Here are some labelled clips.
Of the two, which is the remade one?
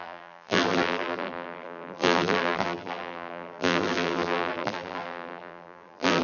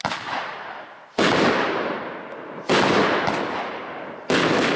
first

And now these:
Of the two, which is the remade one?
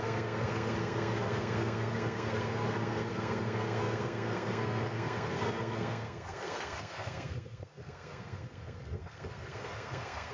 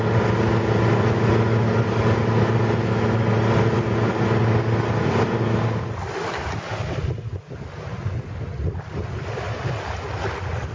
first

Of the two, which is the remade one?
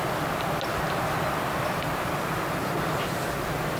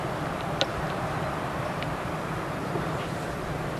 second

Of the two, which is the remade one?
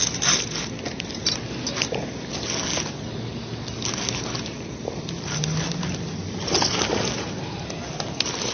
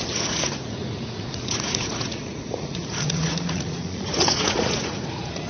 second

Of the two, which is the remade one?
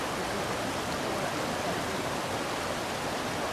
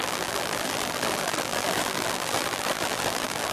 second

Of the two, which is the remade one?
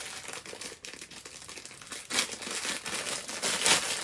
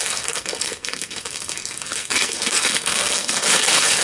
second